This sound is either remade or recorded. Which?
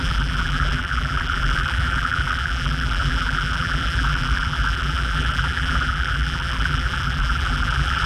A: remade